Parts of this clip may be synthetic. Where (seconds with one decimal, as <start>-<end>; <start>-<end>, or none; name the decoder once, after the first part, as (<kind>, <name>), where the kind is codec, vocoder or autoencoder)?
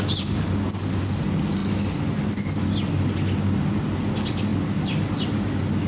none